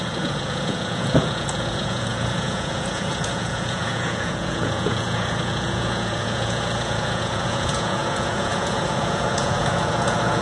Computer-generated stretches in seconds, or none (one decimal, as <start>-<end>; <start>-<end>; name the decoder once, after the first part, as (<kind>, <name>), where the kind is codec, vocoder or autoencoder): 0.0-10.4 (vocoder, Vocos)